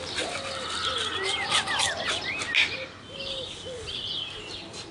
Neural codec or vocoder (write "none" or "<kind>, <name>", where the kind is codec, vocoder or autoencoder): none